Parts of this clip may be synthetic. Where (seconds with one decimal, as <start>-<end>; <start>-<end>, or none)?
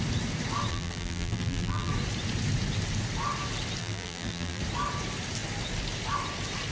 0.7-1.9; 3.8-4.6